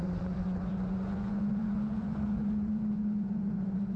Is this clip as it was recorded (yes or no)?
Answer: no